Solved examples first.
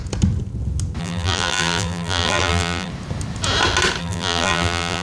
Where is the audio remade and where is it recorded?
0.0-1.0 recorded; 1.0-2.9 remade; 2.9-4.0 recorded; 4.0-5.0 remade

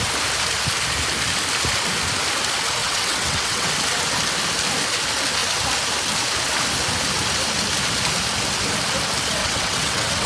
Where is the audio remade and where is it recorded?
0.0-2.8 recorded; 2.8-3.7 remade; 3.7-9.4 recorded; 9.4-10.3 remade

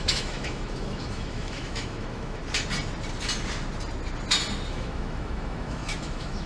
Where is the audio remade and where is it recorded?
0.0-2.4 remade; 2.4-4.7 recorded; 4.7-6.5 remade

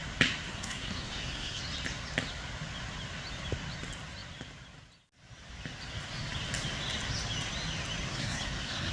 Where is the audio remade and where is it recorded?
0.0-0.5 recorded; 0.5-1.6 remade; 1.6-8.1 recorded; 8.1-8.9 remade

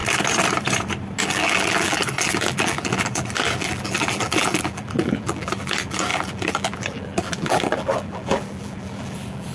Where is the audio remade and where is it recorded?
0.0-1.2 recorded; 1.2-9.5 remade

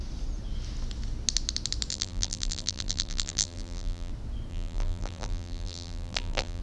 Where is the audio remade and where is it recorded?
0.0-1.9 recorded; 1.9-4.1 remade; 4.1-4.5 recorded; 4.5-6.6 remade

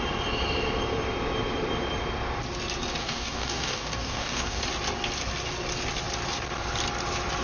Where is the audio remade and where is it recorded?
0.0-3.0 recorded; 3.0-4.6 remade; 4.6-7.4 recorded